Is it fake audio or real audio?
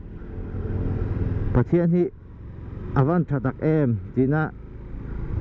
real